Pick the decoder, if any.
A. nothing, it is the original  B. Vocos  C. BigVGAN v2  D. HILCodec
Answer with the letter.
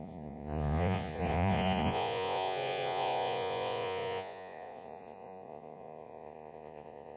B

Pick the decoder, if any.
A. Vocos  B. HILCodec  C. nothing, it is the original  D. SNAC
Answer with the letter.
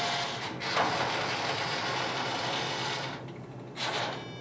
C